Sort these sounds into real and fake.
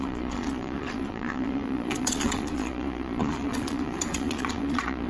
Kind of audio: fake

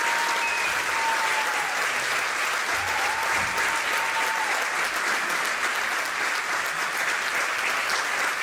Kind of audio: real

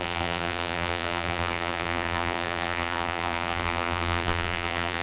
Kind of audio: fake